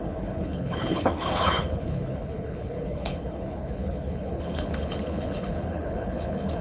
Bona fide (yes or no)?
no